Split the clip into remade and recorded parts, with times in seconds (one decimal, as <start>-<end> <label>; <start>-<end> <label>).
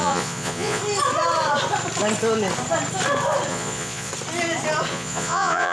0.0-0.8 remade; 0.8-3.5 recorded; 3.5-4.1 remade; 4.1-4.9 recorded; 4.9-5.7 remade